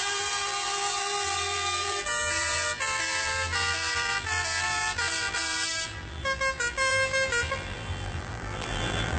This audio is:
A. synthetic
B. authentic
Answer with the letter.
A